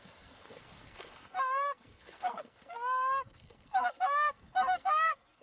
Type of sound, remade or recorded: remade